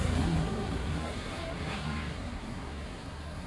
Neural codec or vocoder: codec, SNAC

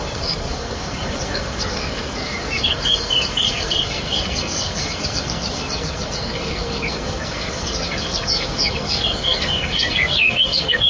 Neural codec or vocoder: codec, SNAC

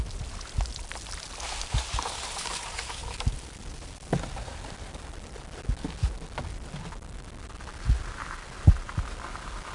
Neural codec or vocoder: none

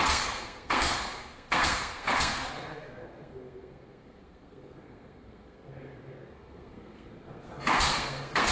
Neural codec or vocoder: codec, SNAC